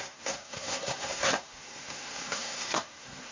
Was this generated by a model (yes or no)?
yes